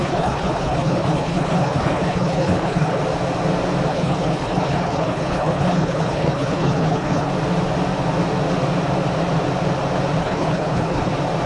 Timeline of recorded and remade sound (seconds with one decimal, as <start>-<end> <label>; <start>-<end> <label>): 0.0-3.0 remade; 3.0-3.9 recorded; 3.9-7.3 remade; 7.3-10.2 recorded; 10.2-11.1 remade; 11.1-11.5 recorded